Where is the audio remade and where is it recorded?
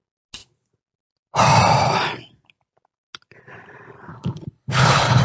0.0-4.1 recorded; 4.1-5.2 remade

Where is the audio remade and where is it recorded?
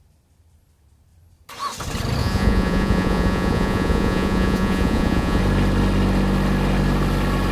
0.0-2.2 recorded; 2.2-5.4 remade; 5.4-7.5 recorded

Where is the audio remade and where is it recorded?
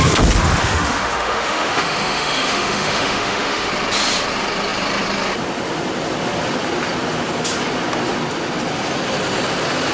0.0-0.6 recorded; 0.6-3.7 remade; 3.7-9.9 recorded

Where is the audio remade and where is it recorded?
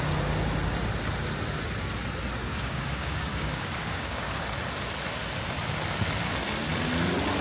0.0-2.4 recorded; 2.4-4.4 remade; 4.4-7.4 recorded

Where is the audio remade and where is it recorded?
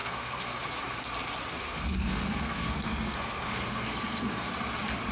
0.0-0.6 remade; 0.6-1.5 recorded; 1.5-4.5 remade; 4.5-5.1 recorded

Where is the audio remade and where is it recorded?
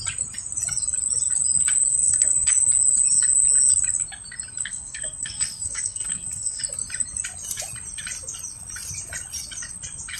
0.0-1.9 recorded; 1.9-2.5 remade; 2.5-4.6 recorded; 4.6-6.6 remade; 6.6-10.2 recorded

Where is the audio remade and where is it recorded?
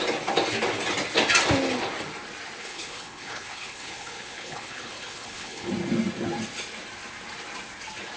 0.0-2.6 recorded; 2.6-5.7 remade; 5.7-8.2 recorded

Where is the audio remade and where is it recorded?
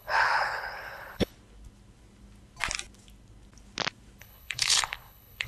0.0-1.3 remade; 1.3-4.2 recorded; 4.2-5.5 remade